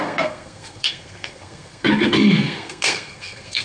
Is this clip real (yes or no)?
no